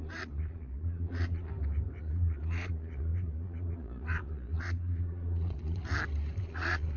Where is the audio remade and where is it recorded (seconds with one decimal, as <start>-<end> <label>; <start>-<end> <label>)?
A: 0.0-1.5 remade; 1.5-2.0 recorded; 2.0-5.8 remade; 5.8-6.4 recorded; 6.4-7.0 remade